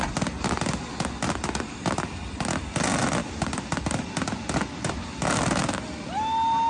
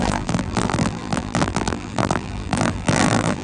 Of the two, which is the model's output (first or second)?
second